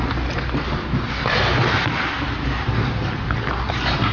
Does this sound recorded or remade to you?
recorded